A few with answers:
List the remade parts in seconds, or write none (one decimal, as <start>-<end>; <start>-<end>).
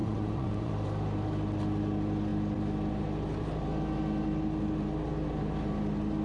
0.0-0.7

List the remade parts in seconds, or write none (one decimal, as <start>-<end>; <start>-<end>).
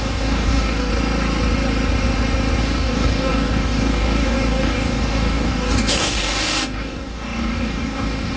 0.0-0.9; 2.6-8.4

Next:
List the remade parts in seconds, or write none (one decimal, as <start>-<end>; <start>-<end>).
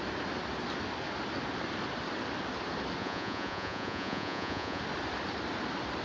3.0-4.8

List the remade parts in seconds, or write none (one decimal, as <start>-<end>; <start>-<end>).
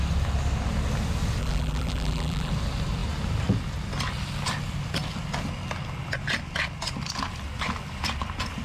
1.4-2.5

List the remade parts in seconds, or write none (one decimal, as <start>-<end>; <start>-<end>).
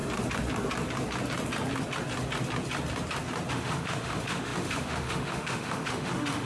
3.5-6.5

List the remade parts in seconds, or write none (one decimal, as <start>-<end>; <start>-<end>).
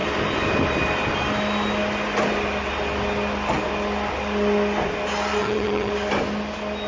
5.4-5.9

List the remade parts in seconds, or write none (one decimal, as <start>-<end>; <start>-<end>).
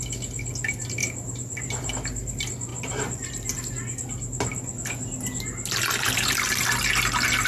1.0-1.9; 2.7-3.6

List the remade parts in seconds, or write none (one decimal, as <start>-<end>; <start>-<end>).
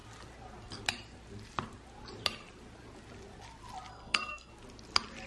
3.9-4.5